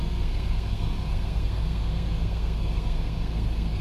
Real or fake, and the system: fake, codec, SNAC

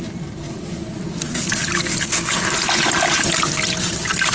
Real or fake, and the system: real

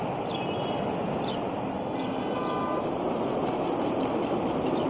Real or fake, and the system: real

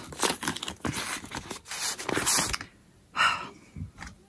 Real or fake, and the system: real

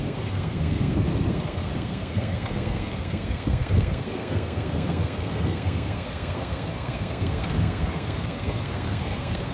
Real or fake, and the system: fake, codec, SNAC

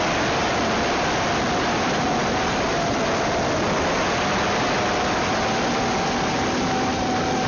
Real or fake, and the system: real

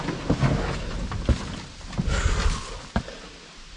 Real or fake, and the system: real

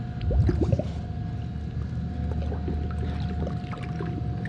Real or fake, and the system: real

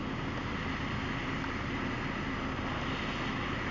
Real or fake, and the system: real